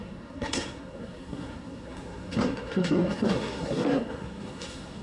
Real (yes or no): no